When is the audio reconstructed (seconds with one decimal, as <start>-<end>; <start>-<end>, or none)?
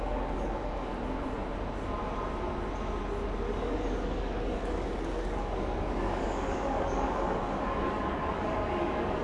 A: 0.0-0.9; 3.6-9.2